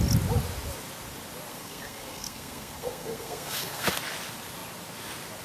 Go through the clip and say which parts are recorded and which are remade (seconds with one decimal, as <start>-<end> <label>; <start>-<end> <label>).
0.0-1.5 recorded; 1.5-3.9 remade; 3.9-5.4 recorded